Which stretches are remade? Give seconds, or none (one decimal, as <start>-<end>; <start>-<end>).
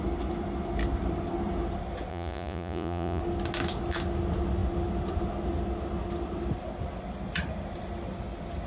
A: 2.1-3.2